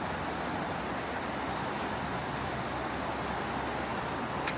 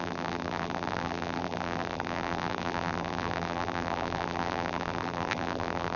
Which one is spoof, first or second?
second